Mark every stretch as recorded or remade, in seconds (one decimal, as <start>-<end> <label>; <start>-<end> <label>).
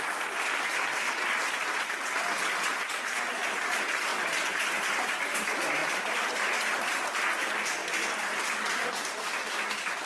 0.0-5.8 recorded; 5.8-6.3 remade; 6.3-10.1 recorded